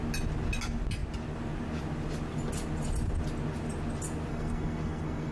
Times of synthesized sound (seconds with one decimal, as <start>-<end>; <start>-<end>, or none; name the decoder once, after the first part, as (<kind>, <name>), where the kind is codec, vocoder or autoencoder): 4.3-5.3 (codec, SNAC)

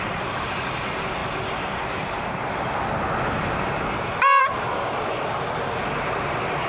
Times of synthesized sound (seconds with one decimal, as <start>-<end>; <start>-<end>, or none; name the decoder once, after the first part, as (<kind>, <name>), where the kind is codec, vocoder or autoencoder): none

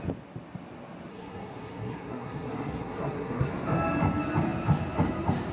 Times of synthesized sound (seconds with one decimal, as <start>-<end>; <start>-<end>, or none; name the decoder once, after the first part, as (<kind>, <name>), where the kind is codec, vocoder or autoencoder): 1.1-3.5 (codec, SNAC)

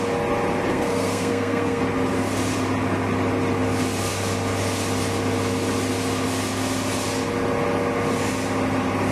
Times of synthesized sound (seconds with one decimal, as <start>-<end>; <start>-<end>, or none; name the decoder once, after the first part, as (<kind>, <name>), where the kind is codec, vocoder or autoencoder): 0.7-1.8 (codec, SNAC)

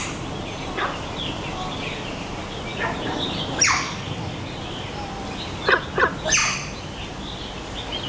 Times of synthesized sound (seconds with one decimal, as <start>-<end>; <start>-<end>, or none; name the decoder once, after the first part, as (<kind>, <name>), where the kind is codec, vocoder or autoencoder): none

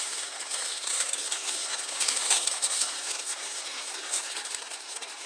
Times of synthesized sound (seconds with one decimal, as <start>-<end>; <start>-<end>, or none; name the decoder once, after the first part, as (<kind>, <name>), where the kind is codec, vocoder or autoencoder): 0.0-5.3 (codec, SNAC)